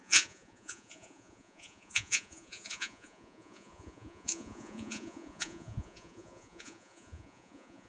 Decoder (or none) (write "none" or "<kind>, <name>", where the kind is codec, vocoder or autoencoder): vocoder, Vocos